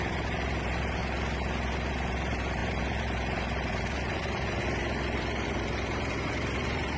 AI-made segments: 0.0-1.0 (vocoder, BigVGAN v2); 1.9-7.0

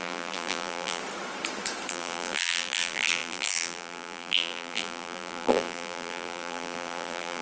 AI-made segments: 0.0-1.0 (vocoder, BigVGAN v2); 1.9-7.4

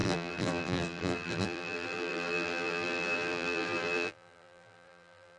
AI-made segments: 0.0-5.4 (vocoder, BigVGAN v2)

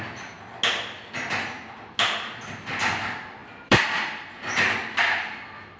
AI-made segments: 3.4-4.3 (vocoder, BigVGAN v2)

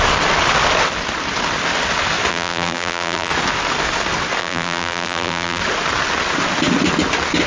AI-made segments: 2.3-3.3 (vocoder, BigVGAN v2); 4.4-5.6

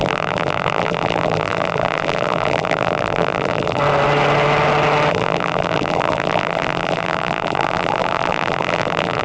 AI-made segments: 0.0-3.8 (vocoder, BigVGAN v2); 5.1-9.2

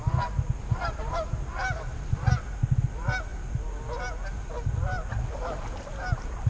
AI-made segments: 1.6-2.3 (vocoder, BigVGAN v2)